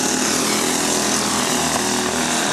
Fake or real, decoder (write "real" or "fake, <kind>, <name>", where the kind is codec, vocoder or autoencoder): real